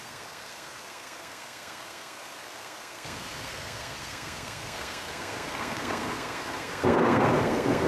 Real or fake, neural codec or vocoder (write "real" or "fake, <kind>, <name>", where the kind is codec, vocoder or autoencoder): fake, codec, SNAC